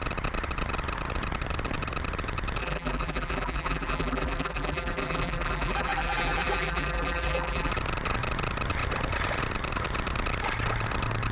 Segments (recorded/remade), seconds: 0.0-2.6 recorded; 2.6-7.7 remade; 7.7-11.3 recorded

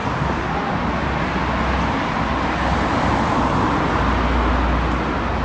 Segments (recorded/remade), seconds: 0.0-1.2 remade; 1.2-5.4 recorded

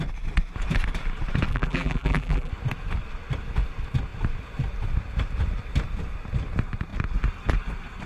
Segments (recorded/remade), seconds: 0.0-1.5 recorded; 1.5-2.5 remade; 2.5-8.1 recorded